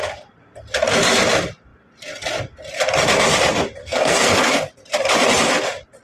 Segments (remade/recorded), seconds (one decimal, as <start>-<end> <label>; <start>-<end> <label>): 0.0-3.8 recorded; 3.8-4.5 remade; 4.5-6.0 recorded

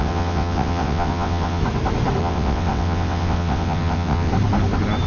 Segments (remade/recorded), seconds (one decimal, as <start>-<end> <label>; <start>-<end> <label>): 0.0-1.6 remade; 1.6-2.2 recorded; 2.2-4.3 remade; 4.3-5.1 recorded

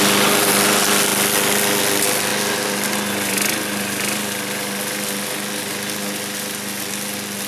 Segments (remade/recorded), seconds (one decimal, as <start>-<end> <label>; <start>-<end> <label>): 0.0-7.5 recorded

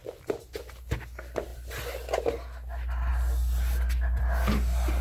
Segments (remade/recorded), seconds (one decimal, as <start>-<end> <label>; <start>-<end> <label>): 0.0-5.0 recorded

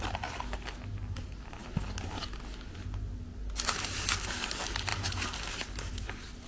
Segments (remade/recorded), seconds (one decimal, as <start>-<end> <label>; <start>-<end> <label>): 0.0-6.5 recorded

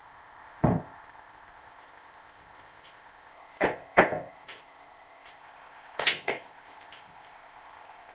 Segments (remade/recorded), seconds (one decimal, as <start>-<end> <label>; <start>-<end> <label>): 0.0-8.1 remade

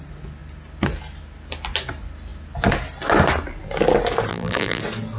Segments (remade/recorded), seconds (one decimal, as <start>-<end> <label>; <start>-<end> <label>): 0.0-4.3 recorded; 4.3-4.8 remade; 4.8-5.2 recorded